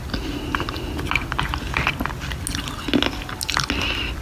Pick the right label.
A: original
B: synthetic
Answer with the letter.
A